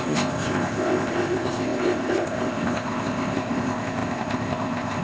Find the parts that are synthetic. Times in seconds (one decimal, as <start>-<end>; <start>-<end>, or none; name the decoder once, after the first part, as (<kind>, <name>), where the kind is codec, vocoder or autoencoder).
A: 0.0-5.0 (codec, ZipCodec)